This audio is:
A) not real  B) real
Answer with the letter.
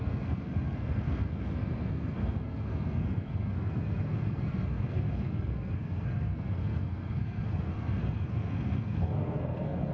A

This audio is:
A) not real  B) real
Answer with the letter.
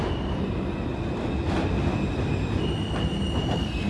B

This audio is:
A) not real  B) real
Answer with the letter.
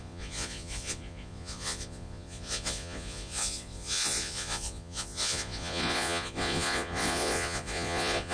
A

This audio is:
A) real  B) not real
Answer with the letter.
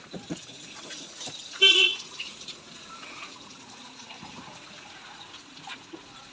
B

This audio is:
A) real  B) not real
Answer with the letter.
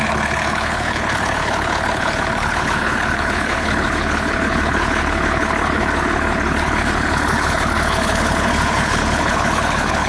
B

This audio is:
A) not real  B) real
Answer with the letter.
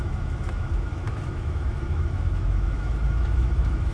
A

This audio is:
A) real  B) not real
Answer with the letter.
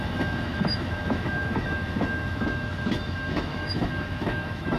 B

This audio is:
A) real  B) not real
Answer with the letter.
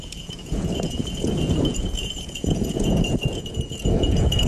B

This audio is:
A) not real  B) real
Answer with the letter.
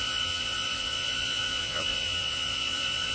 A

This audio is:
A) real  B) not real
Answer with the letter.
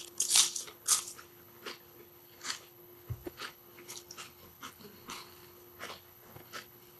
B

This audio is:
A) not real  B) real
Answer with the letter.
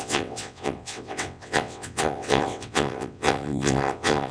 A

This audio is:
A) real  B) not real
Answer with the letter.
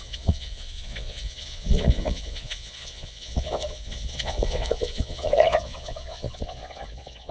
B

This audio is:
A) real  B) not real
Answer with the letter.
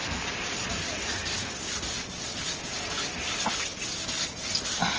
A